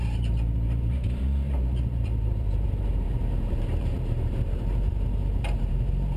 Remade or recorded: remade